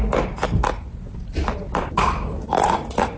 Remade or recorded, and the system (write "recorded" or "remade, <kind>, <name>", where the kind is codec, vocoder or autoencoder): recorded